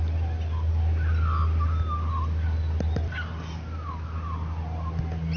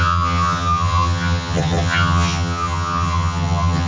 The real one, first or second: first